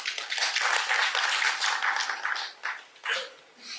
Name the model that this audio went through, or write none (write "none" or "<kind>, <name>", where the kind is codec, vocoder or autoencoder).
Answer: none